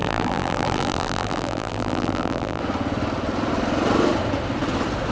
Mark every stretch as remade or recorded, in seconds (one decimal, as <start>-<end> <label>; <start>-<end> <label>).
0.0-2.6 remade; 2.6-5.1 recorded